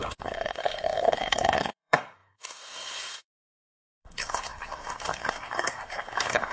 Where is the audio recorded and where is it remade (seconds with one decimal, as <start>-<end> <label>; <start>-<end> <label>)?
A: 0.0-6.5 remade